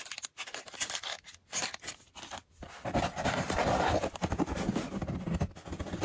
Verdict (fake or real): real